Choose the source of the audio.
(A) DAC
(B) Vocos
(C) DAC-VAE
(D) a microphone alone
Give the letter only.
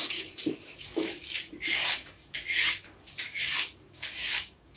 A